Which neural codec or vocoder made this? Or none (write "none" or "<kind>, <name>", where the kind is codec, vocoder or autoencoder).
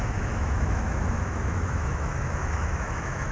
autoencoder, DAC-VAE